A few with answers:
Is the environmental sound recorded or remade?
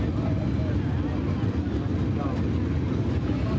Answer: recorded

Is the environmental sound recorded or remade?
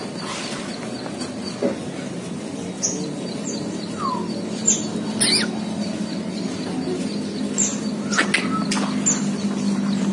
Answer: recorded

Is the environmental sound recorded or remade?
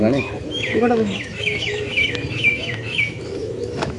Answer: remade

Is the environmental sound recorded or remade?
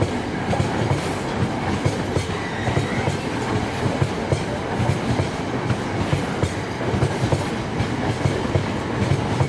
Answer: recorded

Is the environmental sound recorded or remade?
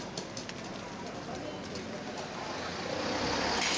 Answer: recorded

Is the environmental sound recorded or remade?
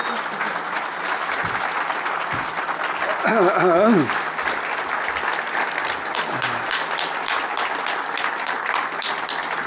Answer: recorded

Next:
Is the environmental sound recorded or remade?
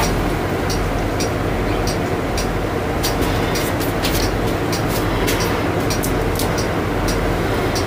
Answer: recorded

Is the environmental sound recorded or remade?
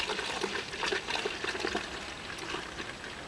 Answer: recorded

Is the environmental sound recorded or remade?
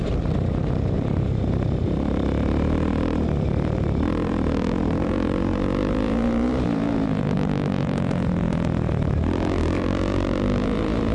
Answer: remade